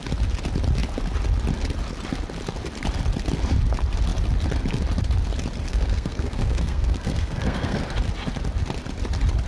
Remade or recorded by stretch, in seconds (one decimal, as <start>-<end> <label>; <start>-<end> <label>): 0.0-5.7 recorded; 5.7-7.8 remade; 7.8-9.5 recorded